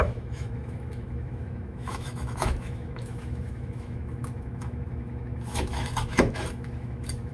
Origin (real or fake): fake